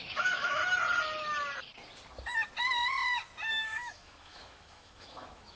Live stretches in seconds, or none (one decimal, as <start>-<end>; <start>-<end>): 0.6-3.5